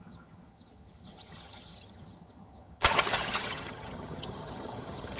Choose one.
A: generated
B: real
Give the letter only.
A